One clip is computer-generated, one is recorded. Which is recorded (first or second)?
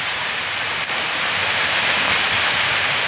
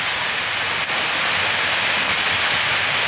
second